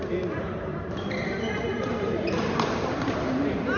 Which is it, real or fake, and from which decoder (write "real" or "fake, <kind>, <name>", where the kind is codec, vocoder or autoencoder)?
fake, vocoder, BigVGAN v2